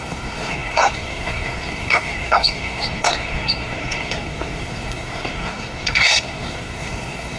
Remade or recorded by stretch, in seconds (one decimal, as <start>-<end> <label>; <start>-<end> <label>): 0.0-7.4 remade